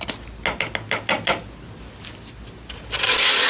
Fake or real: real